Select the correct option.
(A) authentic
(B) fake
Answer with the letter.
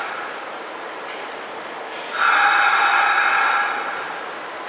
A